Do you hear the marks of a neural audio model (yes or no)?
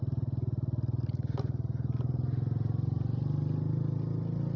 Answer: no